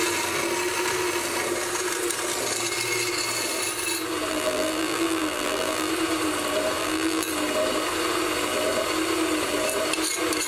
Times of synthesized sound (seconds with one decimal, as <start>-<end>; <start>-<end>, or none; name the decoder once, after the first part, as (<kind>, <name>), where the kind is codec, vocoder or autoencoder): 4.3-5.9 (vocoder, BigVGAN v2); 6.8-7.3